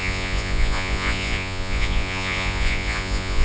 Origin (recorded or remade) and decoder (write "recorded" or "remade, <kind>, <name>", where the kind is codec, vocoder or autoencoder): remade, vocoder, Vocos